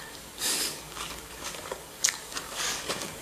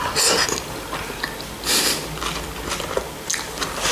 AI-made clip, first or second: first